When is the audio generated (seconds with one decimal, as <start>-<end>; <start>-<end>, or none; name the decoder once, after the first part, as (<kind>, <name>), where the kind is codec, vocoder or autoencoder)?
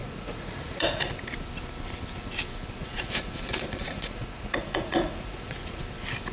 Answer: 0.0-1.1 (vocoder, Vocos); 2.8-5.8